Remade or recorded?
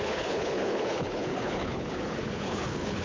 remade